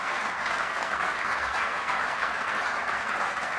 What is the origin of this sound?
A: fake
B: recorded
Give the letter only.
A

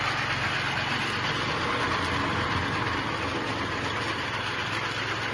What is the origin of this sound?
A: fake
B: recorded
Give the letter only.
B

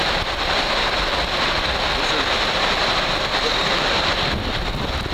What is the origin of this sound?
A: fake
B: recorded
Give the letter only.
B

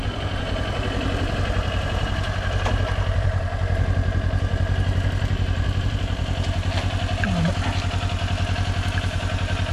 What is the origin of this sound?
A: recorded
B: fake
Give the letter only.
A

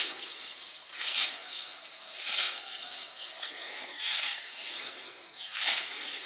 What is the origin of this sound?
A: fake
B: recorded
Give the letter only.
A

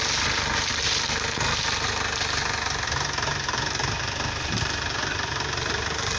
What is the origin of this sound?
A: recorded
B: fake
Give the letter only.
A